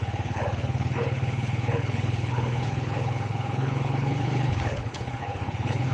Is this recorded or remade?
remade